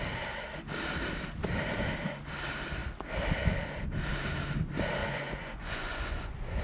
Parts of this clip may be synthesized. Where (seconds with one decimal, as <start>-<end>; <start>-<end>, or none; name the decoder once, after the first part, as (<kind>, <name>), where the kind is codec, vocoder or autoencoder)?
5.0-6.6 (vocoder, Vocos)